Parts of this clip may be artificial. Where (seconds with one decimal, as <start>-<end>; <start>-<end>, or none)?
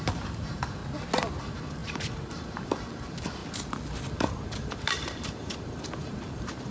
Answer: 0.0-0.8; 1.4-3.4; 4.1-6.7